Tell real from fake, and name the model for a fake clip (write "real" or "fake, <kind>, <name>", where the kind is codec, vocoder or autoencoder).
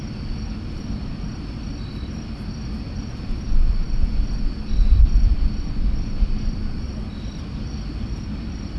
real